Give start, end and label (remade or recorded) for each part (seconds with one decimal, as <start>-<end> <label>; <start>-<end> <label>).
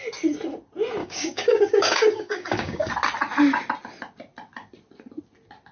0.0-1.0 recorded; 1.0-2.9 remade; 2.9-5.7 recorded